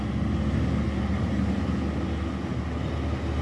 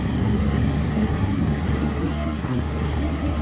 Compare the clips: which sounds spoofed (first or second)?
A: second